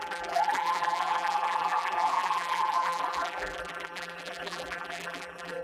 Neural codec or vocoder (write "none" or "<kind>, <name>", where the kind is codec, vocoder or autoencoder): vocoder, BigVGAN v2